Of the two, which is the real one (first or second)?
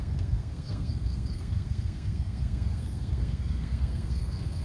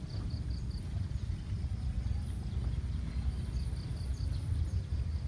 second